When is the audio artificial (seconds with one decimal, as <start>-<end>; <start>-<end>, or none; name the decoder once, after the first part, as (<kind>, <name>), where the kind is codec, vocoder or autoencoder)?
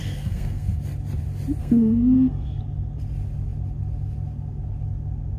0.0-0.8 (codec, SNAC); 1.6-2.6